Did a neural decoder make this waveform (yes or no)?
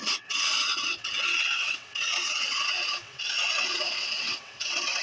yes